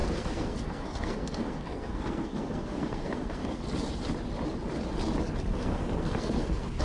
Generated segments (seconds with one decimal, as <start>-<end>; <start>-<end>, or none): 0.0-3.6; 5.5-6.8